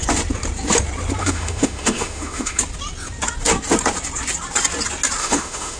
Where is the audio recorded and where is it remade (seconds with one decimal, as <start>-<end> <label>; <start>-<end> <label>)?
0.0-1.2 recorded; 1.2-2.6 remade; 2.6-5.2 recorded; 5.2-5.8 remade